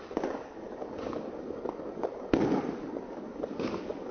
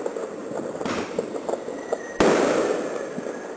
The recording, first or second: second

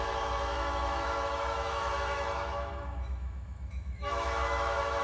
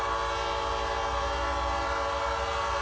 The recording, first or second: second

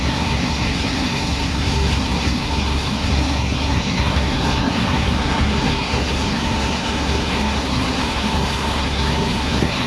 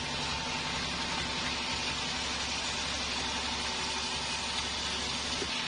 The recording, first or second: second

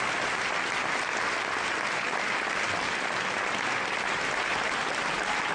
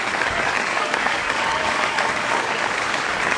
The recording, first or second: first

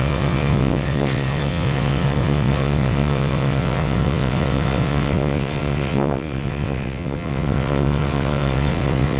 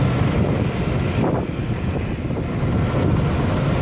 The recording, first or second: second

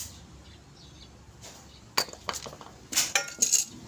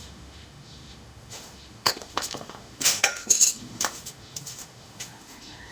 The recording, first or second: first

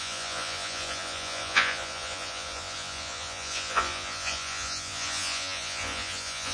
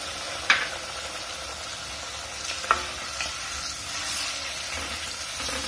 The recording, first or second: second